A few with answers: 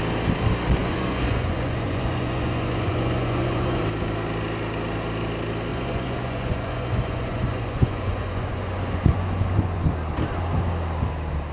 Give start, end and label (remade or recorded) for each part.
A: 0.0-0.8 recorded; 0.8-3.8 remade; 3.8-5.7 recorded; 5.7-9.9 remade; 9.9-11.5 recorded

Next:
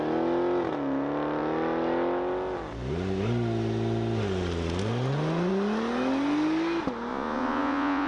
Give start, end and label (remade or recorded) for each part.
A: 0.0-7.1 recorded; 7.1-8.1 remade

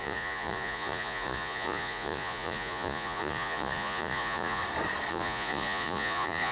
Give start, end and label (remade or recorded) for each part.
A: 0.0-4.6 remade; 4.6-5.1 recorded; 5.1-6.5 remade

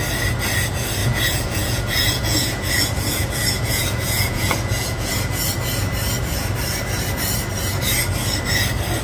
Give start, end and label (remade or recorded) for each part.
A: 0.0-1.0 recorded; 1.0-5.5 remade; 5.5-9.0 recorded

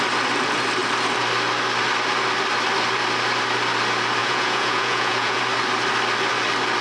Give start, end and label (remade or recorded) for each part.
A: 0.0-4.2 recorded; 4.2-5.4 remade; 5.4-6.8 recorded

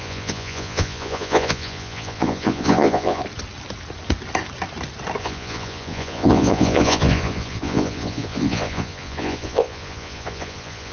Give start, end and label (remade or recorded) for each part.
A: 0.0-3.2 remade; 3.2-5.2 recorded; 5.2-10.9 remade

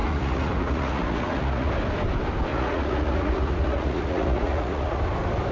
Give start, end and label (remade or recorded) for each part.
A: 0.0-1.7 remade; 1.7-2.5 recorded; 2.5-5.0 remade; 5.0-5.5 recorded

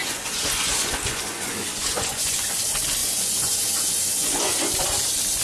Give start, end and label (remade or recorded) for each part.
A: 0.0-2.6 remade; 2.6-3.0 recorded; 3.0-4.7 remade; 4.7-5.4 recorded